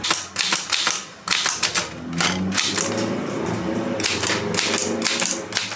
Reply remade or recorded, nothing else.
recorded